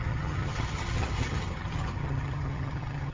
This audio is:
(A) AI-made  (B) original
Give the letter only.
A